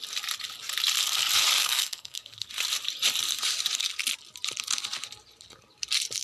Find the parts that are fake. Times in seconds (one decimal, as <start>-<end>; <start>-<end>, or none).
1.6-2.5